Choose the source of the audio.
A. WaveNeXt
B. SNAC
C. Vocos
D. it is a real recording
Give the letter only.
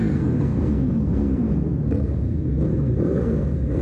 B